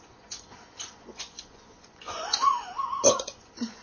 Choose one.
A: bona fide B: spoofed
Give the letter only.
B